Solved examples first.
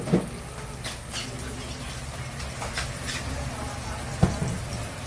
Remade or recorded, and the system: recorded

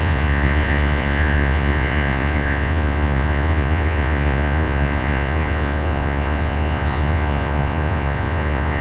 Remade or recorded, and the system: remade, vocoder, Vocos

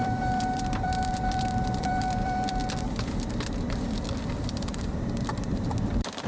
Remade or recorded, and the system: remade, vocoder, BigVGAN v2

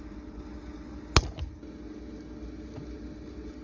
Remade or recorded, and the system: recorded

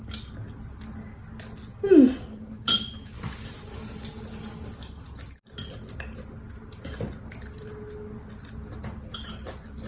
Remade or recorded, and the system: recorded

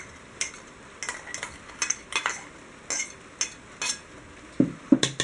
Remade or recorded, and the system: recorded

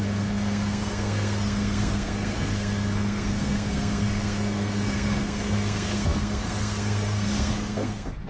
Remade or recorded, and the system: remade, codec, SNAC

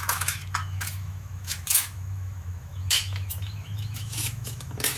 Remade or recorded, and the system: remade, autoencoder, DAC-VAE